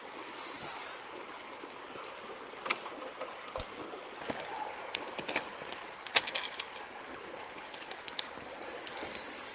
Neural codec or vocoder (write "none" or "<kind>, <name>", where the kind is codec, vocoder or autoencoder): none